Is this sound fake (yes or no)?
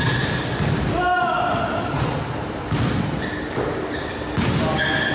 no